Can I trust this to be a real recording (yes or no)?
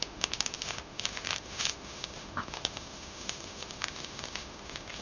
no